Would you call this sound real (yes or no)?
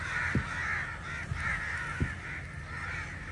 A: yes